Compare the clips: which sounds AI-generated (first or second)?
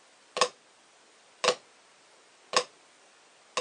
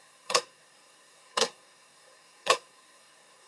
second